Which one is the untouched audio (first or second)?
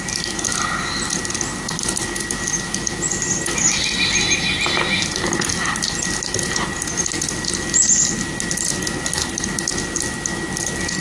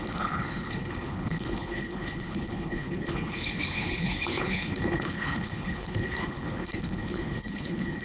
first